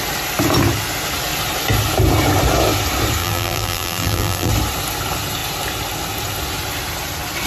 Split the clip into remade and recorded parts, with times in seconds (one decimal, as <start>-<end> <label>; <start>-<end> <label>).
0.0-3.2 recorded; 3.2-4.5 remade; 4.5-7.5 recorded

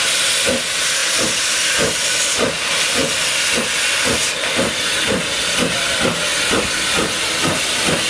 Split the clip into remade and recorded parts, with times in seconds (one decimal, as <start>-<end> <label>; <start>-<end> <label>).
0.0-1.0 recorded; 1.0-5.8 remade; 5.8-6.3 recorded; 6.3-8.1 remade

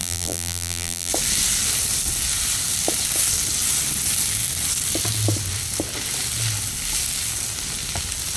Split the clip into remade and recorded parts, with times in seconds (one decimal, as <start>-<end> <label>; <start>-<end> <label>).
0.0-1.1 remade; 1.1-8.4 recorded

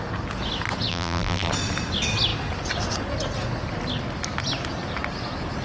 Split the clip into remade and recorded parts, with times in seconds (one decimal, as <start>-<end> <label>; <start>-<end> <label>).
0.0-0.9 recorded; 0.9-1.5 remade; 1.5-5.6 recorded

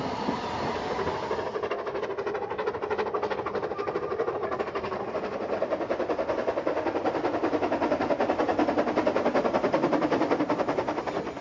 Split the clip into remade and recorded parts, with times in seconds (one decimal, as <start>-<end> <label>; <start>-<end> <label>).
0.0-1.5 recorded; 1.5-2.0 remade; 2.0-8.5 recorded; 8.5-10.4 remade; 10.4-11.4 recorded

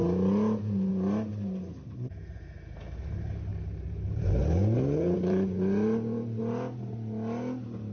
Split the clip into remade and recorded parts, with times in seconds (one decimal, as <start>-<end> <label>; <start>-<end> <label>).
0.0-0.9 remade; 0.9-1.3 recorded; 1.3-2.1 remade; 2.1-3.5 recorded; 3.5-6.4 remade; 6.4-7.9 recorded